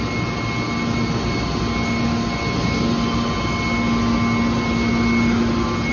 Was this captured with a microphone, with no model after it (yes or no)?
yes